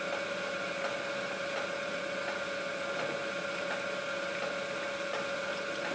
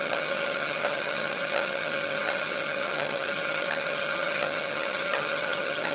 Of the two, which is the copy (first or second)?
second